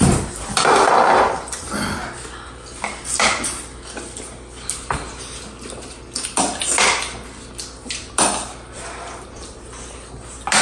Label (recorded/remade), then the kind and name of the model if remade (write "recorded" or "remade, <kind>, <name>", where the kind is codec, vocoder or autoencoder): recorded